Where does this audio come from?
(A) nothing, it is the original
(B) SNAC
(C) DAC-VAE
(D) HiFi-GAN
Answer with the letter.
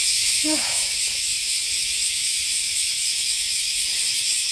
C